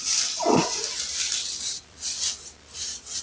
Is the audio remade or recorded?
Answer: recorded